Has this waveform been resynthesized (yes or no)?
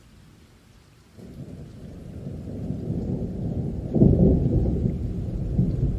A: no